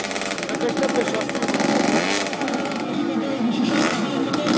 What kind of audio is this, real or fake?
real